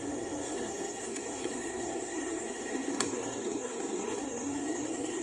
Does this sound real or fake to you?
fake